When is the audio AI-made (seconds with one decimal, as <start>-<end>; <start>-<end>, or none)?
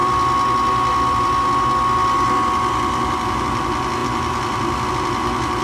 4.0-4.9